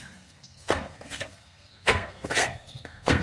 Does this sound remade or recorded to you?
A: remade